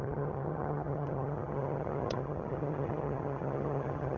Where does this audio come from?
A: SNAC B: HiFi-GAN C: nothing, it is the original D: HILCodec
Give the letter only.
B